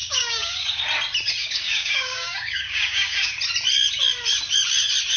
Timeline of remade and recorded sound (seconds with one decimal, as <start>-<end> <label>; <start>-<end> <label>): 0.0-0.8 remade; 0.8-1.4 recorded; 1.4-3.3 remade; 3.3-5.2 recorded